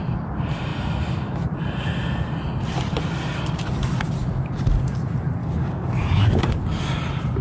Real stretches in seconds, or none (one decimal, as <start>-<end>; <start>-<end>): 0.0-5.4; 6.4-7.4